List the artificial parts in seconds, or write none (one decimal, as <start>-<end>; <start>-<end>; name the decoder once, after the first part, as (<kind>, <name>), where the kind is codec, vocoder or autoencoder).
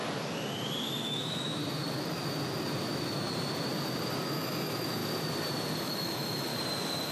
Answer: 1.0-1.6 (autoencoder, DAC-VAE); 4.3-5.0; 5.8-6.5